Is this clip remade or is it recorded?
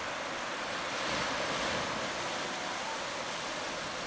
recorded